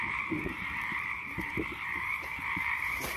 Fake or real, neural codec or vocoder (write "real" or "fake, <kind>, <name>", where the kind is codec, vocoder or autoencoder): fake, vocoder, BigVGAN v2